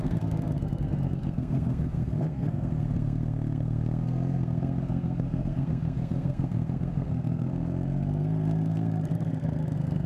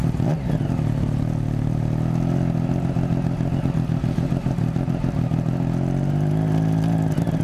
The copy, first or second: first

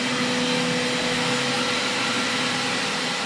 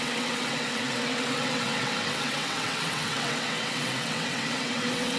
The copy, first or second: second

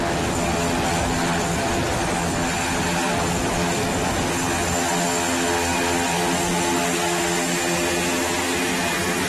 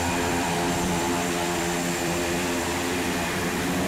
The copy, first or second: second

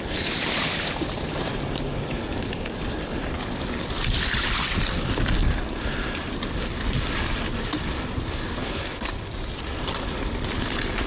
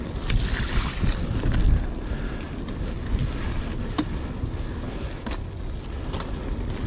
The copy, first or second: first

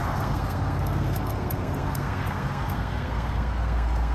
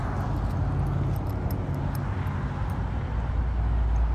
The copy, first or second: first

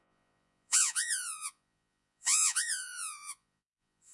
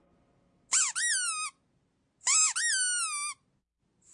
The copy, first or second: first